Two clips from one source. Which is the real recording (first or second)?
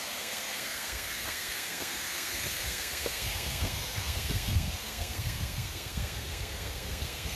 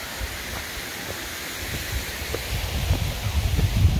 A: second